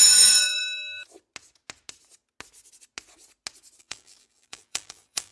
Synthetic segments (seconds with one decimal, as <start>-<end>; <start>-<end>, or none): 0.0-0.6; 3.8-5.3